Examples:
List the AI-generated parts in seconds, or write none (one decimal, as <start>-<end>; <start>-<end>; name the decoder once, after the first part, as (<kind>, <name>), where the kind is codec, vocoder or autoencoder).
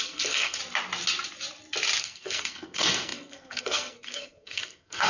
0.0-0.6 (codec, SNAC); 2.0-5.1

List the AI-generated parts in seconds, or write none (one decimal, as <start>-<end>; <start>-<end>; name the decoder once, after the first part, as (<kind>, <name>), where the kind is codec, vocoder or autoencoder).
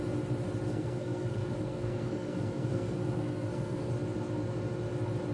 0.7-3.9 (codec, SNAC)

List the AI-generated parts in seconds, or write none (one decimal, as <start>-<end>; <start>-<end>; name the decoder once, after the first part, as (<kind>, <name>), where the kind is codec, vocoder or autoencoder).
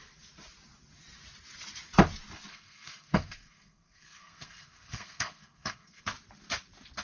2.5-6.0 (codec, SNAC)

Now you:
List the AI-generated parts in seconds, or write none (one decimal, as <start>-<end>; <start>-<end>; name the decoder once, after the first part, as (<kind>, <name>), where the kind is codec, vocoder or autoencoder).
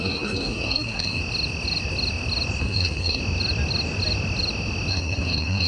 0.0-1.2 (codec, SNAC); 2.6-3.2; 4.9-5.7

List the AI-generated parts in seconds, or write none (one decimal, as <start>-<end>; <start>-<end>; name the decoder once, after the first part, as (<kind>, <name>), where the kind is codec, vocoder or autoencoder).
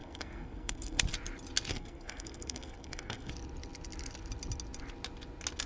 0.0-1.0 (codec, SNAC); 1.7-3.3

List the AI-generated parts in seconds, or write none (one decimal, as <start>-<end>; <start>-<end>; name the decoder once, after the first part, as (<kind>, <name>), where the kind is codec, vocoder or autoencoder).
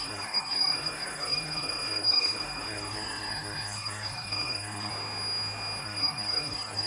0.0-4.9 (codec, SNAC); 5.8-6.9